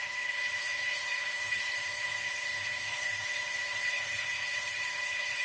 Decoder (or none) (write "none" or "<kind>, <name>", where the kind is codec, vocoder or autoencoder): codec, HILCodec